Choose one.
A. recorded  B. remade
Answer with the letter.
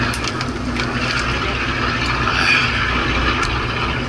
A